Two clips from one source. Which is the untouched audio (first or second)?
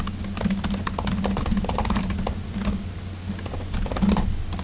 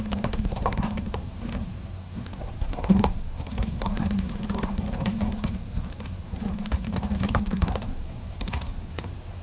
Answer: first